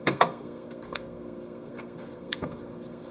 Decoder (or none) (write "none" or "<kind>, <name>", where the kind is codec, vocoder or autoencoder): codec, SNAC